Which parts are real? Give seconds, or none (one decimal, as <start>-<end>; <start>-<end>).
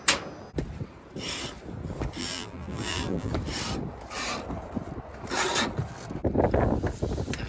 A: 0.0-2.2; 3.3-7.5